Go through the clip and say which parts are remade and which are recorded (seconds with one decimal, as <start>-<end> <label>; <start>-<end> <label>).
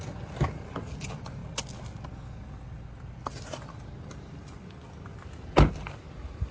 0.0-6.5 recorded